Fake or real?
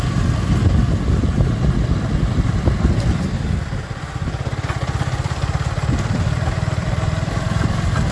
fake